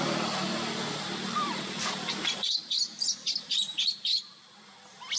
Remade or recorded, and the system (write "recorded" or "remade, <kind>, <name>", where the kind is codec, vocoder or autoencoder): recorded